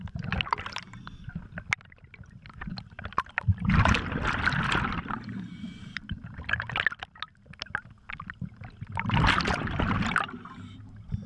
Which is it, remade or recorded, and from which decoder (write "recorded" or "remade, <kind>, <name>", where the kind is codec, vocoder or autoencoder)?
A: recorded